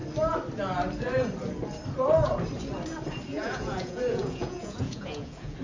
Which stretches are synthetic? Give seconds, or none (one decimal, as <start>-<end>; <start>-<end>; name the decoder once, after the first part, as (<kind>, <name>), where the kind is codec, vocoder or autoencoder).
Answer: 3.3-5.6 (vocoder, Vocos)